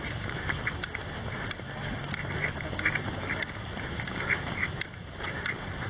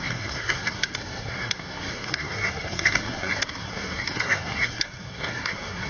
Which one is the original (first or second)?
first